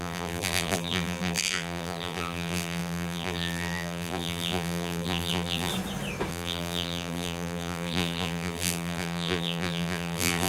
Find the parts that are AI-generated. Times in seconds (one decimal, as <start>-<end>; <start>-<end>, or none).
0.0-5.7; 6.3-10.5